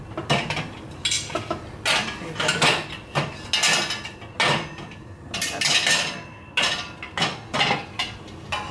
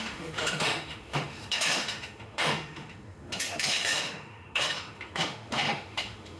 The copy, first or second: second